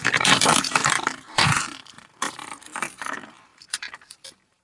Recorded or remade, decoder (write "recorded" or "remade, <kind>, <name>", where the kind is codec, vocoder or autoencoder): remade, vocoder, BigVGAN v2